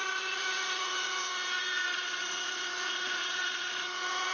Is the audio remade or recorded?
remade